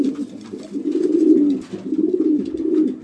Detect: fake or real real